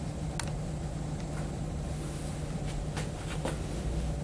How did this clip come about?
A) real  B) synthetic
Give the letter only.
A